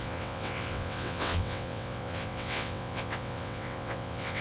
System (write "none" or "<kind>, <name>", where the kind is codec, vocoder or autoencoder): vocoder, WaveNeXt